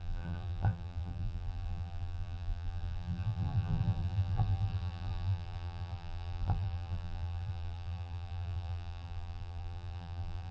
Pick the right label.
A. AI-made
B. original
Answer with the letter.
A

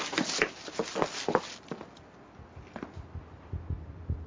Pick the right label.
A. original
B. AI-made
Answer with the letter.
A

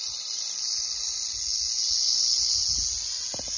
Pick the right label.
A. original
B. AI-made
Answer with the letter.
A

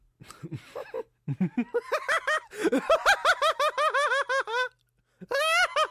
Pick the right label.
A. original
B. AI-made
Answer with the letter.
A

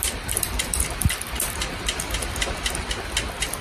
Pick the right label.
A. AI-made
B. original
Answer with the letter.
B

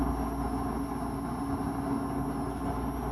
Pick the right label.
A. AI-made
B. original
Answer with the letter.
B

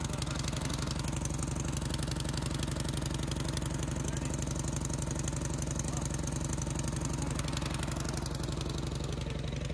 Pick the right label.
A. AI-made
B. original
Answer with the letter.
B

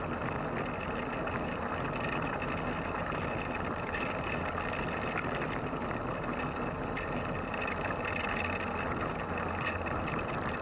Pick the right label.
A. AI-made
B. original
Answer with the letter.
B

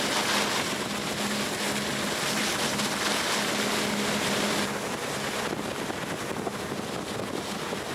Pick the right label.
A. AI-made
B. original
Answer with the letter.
B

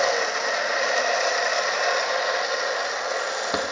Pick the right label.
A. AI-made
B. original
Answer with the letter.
B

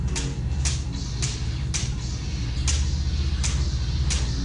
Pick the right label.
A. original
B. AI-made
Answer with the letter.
A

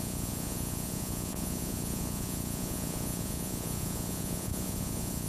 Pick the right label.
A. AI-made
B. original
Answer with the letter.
A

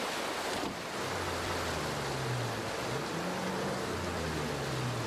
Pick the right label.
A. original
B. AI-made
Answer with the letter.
A